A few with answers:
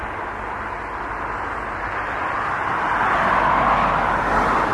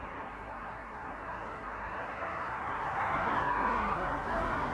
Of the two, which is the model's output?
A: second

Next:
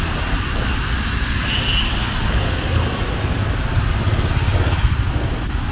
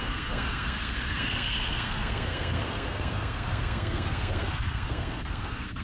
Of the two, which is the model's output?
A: second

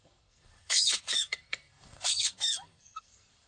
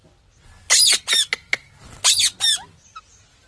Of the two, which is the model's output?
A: first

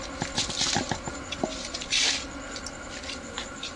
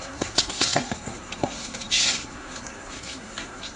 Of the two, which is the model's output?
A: second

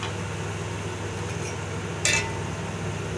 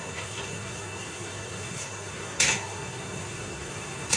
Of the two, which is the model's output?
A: second